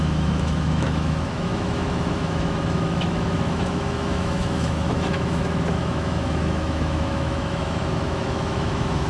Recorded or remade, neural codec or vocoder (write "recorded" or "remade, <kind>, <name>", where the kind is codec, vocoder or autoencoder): remade, autoencoder, DAC-VAE